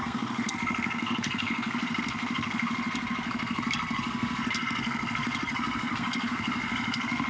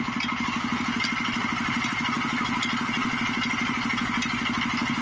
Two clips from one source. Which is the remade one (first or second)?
first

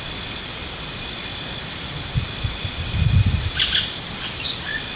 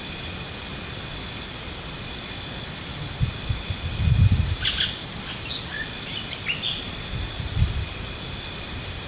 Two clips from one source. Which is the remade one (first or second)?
first